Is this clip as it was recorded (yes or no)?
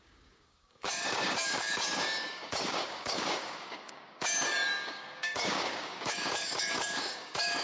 no